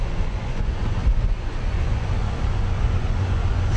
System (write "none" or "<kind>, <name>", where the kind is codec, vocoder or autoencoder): vocoder, Vocos